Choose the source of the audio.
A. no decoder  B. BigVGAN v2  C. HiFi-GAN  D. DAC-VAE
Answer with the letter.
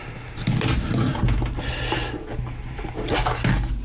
A